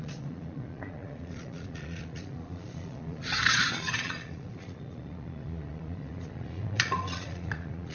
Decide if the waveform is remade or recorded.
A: remade